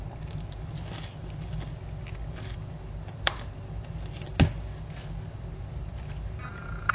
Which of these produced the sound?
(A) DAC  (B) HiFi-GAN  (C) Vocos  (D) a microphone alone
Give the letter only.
D